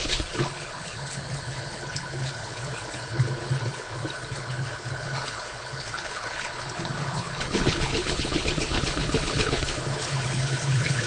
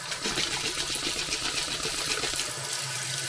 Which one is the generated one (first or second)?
first